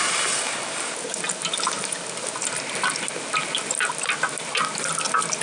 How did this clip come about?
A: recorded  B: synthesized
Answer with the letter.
A